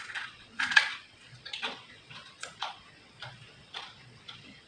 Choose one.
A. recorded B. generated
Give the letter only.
B